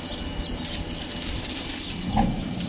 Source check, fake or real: real